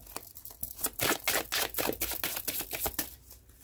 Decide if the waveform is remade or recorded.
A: recorded